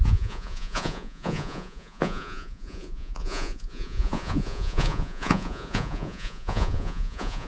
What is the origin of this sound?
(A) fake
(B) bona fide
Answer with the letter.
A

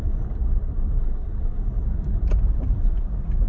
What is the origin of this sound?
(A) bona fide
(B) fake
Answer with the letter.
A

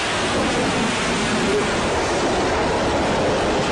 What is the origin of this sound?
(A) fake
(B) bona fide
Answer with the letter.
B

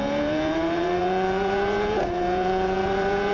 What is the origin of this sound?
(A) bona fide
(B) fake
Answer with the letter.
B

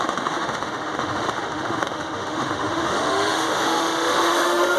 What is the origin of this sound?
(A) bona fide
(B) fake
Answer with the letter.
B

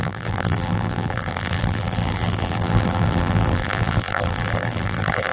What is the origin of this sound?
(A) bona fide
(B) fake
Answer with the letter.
B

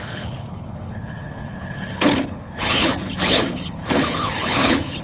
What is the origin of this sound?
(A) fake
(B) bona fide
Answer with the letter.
A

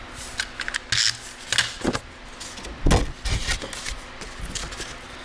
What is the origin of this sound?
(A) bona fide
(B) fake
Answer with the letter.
A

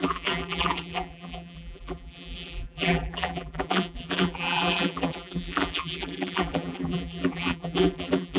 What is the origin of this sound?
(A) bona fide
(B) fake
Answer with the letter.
B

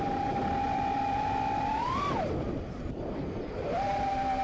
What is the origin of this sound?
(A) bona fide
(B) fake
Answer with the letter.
B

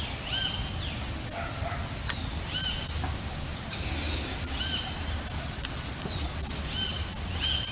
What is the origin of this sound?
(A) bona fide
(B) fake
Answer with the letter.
A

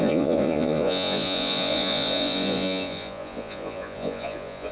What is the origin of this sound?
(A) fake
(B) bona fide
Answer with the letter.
A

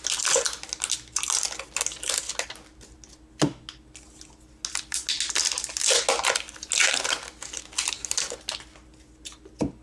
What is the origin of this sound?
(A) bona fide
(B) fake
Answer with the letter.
A